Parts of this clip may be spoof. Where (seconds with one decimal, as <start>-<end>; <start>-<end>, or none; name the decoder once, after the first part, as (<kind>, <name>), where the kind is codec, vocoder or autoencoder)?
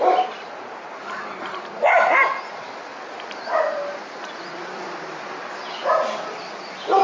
none